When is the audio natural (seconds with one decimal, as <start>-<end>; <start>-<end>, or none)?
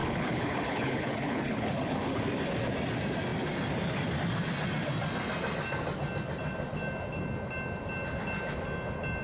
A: 2.2-9.2